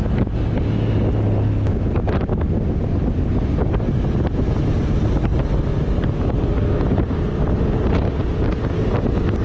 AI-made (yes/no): no